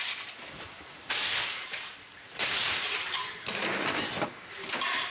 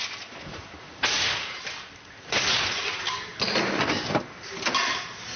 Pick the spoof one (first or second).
first